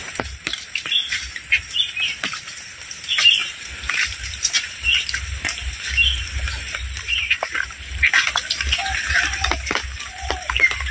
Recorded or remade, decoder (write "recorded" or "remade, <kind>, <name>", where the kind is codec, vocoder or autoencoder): remade, vocoder, BigVGAN v2